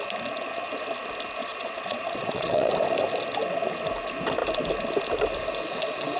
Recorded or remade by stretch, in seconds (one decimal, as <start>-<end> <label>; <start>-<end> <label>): 0.0-1.4 recorded; 1.4-2.7 remade; 2.7-6.2 recorded